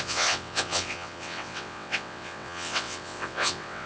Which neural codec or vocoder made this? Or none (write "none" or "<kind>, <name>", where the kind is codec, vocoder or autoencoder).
vocoder, WaveNeXt